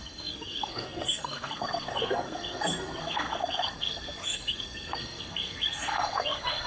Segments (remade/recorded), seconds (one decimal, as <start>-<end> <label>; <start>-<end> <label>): 0.0-6.7 remade